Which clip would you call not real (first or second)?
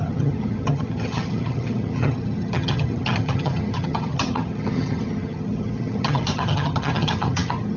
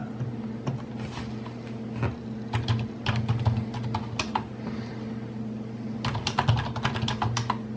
first